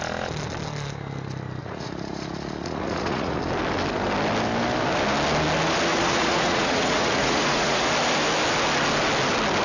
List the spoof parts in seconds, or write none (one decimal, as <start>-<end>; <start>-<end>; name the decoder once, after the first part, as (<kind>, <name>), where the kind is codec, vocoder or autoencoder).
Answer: 1.6-3.4 (vocoder, Vocos); 5.9-7.9